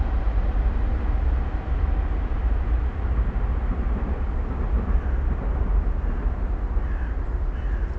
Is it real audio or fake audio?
real